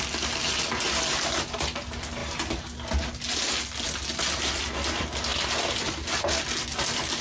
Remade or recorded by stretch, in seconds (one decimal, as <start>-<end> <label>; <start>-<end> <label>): 0.0-7.2 recorded